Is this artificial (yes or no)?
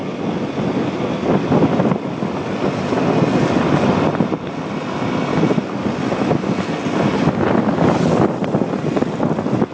no